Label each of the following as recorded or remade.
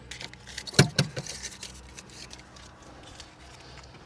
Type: recorded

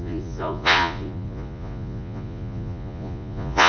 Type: remade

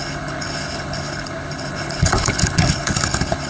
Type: remade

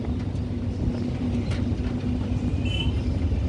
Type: recorded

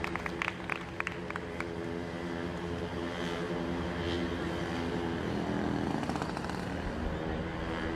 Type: recorded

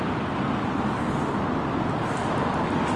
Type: recorded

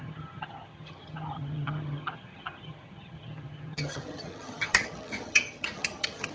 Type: remade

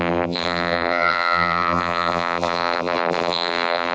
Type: remade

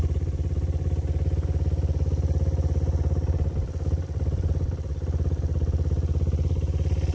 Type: recorded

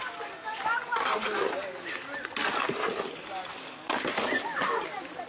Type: recorded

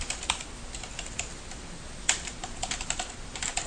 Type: recorded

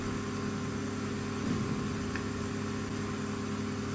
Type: recorded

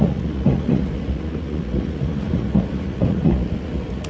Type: remade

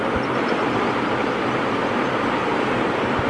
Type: recorded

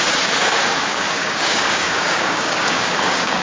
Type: remade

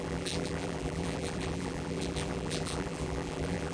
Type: remade